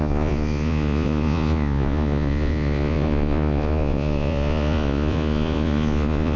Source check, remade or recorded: remade